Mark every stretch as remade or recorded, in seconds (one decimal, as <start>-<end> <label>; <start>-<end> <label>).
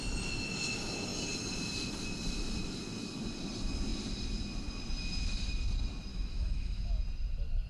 0.0-6.1 recorded; 6.1-6.9 remade; 6.9-7.7 recorded